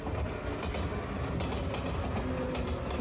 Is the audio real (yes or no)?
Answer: yes